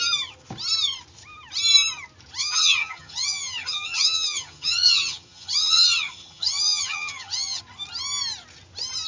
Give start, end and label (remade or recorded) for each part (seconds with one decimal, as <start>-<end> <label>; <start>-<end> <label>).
0.0-2.4 recorded; 2.4-7.6 remade; 7.6-9.1 recorded

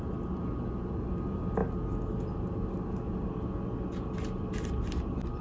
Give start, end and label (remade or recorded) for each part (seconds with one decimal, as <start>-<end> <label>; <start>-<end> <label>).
0.0-5.4 recorded

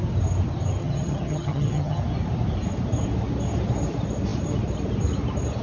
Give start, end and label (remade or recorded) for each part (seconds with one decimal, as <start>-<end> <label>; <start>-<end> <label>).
0.0-0.8 recorded; 0.8-2.0 remade; 2.0-5.6 recorded